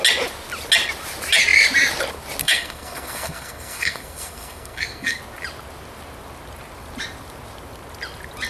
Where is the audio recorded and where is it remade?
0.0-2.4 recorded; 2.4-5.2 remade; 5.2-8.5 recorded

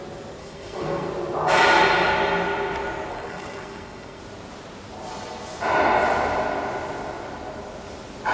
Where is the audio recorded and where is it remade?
0.0-0.4 recorded; 0.4-1.1 remade; 1.1-3.1 recorded; 3.1-4.2 remade; 4.2-8.3 recorded